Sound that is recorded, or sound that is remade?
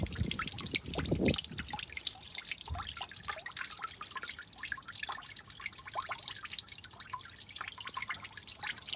recorded